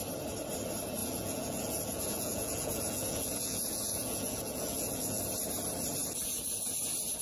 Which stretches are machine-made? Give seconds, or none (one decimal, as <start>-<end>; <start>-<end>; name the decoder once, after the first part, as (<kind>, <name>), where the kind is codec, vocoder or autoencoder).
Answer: 1.0-5.2 (vocoder, Vocos)